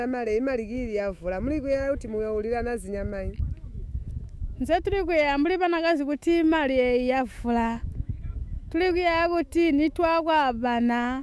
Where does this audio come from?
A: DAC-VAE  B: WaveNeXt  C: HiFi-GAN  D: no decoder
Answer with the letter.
A